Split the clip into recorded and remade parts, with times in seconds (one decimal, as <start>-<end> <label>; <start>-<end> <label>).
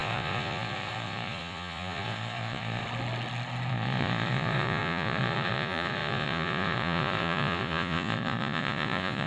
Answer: 0.0-2.8 remade; 2.8-3.7 recorded; 3.7-9.3 remade